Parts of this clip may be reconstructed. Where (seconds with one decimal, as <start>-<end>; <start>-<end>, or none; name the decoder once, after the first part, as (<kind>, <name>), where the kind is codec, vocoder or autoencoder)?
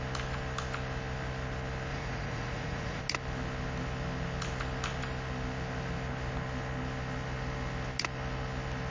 1.9-3.0 (vocoder, Vocos)